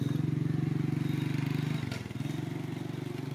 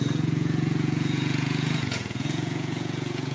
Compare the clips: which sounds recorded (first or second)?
first